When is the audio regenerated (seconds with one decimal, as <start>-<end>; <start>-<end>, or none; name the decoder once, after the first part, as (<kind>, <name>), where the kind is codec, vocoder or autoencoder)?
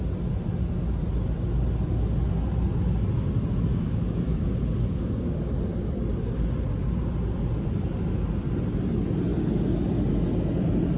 3.7-5.5 (codec, DAC)